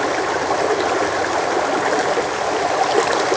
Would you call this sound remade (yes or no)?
no